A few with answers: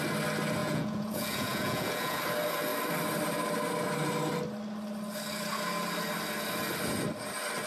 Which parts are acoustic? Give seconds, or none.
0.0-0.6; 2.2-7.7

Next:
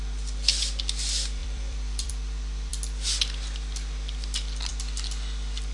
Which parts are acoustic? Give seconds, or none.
0.0-1.4; 2.1-5.7